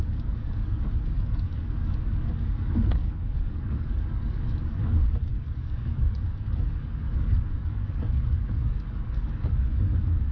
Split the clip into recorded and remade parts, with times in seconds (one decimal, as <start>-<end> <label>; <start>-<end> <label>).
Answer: 0.0-10.3 remade